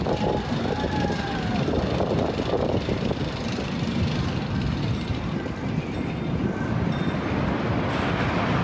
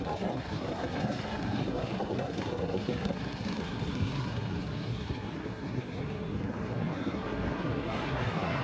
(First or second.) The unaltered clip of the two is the first